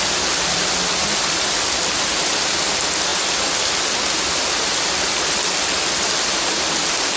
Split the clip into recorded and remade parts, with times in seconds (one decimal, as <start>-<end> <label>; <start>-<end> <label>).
0.0-7.2 recorded